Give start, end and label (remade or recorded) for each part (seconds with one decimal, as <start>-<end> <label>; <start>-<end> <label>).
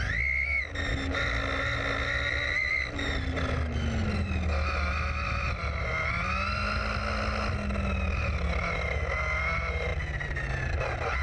0.0-11.2 recorded